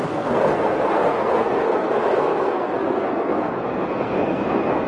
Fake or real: fake